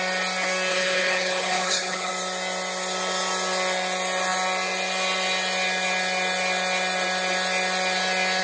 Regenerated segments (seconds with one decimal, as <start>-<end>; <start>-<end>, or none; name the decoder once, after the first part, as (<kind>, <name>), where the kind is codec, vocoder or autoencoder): 0.7-2.1 (codec, HILCodec)